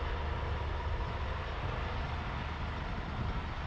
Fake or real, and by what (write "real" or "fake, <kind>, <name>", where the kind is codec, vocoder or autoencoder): real